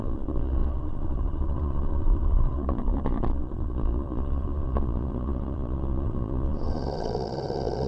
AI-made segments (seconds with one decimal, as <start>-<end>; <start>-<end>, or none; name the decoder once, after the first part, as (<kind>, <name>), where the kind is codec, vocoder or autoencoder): 0.0-7.9 (vocoder, Vocos)